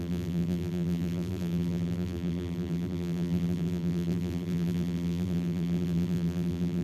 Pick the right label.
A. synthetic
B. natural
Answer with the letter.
A